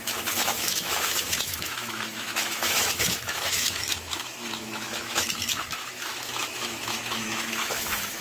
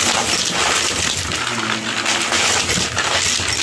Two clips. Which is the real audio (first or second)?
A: second